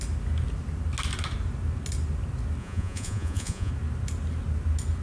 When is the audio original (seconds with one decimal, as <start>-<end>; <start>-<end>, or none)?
0.0-2.6; 3.7-5.0